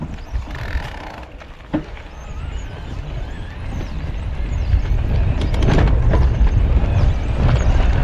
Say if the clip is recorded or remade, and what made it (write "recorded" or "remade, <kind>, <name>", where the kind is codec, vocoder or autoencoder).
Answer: recorded